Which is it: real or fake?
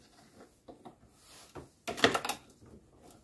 real